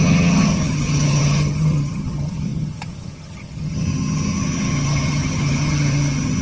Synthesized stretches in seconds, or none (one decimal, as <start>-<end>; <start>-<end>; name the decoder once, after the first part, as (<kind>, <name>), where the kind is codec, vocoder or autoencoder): 0.0-6.4 (vocoder, HiFi-GAN)